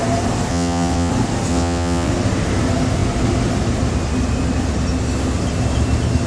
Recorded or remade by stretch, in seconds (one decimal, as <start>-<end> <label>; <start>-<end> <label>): 0.0-0.5 recorded; 0.5-1.1 remade; 1.1-1.5 recorded; 1.5-2.1 remade; 2.1-6.3 recorded